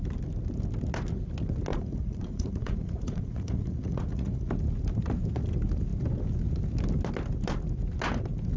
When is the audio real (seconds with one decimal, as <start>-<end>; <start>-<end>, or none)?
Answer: 0.0-1.7; 4.5-8.6